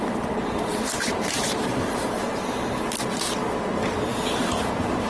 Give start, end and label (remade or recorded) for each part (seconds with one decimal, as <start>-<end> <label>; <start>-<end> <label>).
0.0-0.7 recorded; 0.7-2.5 remade; 2.5-5.1 recorded